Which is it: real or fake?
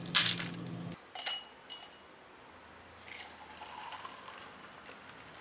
real